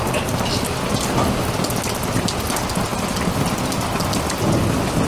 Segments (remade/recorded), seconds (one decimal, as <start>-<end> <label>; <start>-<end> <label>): 0.0-5.1 recorded